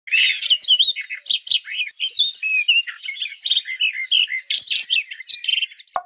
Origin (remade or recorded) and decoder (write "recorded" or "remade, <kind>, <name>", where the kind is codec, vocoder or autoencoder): recorded